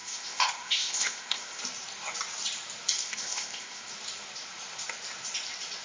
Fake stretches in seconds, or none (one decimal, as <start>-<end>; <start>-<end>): 0.0-1.6; 3.0-3.9